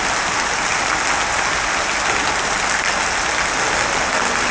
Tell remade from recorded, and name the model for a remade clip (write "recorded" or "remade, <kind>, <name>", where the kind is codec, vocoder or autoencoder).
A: recorded